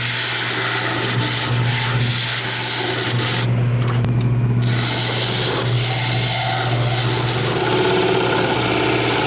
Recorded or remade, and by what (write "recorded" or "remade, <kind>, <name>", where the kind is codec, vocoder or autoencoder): recorded